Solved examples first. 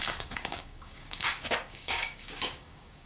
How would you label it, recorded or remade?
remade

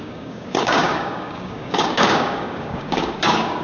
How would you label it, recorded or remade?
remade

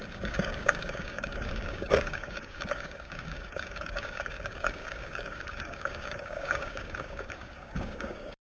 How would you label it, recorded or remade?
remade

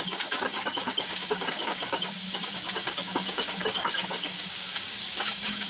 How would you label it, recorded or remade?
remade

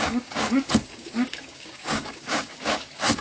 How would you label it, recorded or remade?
remade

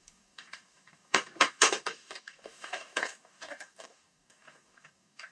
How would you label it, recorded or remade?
remade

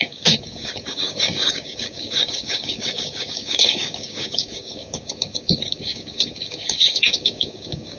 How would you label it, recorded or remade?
remade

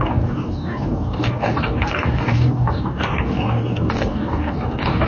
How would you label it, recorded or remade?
remade